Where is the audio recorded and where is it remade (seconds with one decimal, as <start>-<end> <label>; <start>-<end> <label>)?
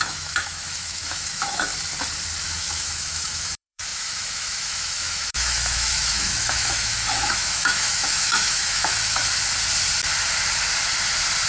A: 0.0-1.7 remade; 1.7-2.4 recorded; 2.4-9.2 remade; 9.2-11.5 recorded